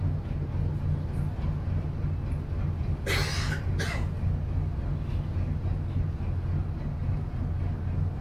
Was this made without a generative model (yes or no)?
yes